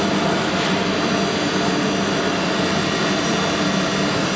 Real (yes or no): yes